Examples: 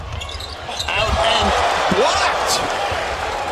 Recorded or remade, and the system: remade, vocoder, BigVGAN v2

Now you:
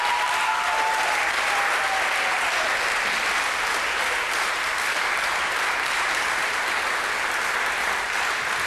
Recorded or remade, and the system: recorded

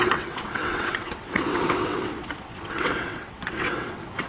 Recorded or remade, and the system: remade, vocoder, WaveNeXt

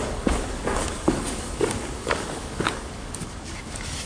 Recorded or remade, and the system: remade, codec, DAC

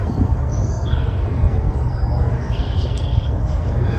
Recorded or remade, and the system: remade, codec, SNAC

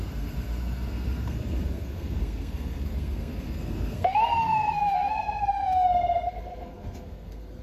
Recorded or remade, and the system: remade, codec, SNAC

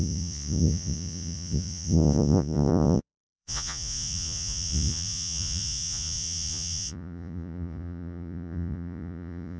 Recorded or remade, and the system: remade, vocoder, Vocos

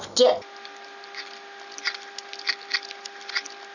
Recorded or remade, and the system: recorded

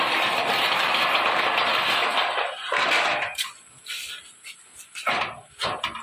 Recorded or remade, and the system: recorded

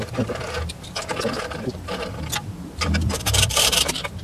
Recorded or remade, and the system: remade, vocoder, BigVGAN v2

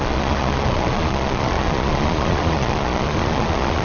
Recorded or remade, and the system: remade, vocoder, Vocos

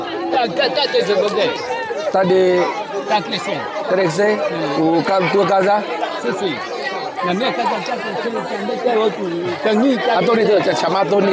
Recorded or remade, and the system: recorded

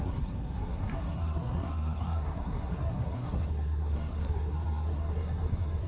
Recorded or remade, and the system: remade, codec, SNAC